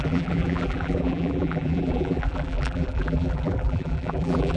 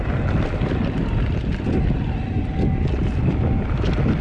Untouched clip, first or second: second